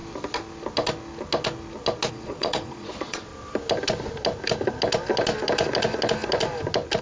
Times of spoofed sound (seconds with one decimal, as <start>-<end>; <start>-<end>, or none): 2.1-3.3